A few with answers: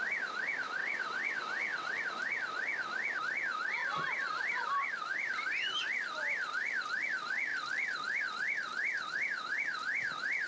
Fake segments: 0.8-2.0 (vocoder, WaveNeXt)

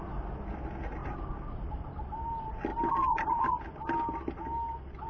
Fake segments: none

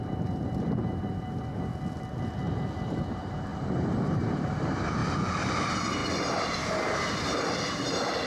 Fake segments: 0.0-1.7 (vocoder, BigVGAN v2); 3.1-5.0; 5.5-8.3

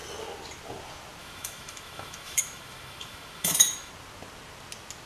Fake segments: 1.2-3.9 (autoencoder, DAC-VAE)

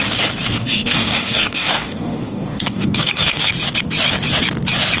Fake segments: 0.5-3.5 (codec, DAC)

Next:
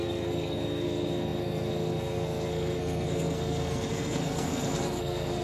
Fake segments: 0.0-5.4 (codec, SNAC)

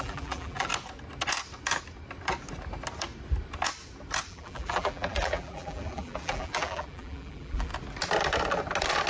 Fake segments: 0.0-0.7 (vocoder, BigVGAN v2); 4.3-7.7